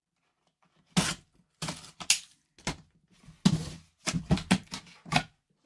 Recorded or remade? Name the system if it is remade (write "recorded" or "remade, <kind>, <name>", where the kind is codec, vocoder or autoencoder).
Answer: recorded